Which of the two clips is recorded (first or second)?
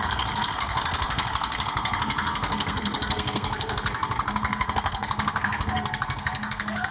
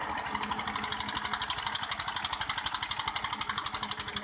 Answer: second